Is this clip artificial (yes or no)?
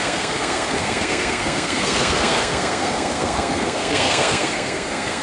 yes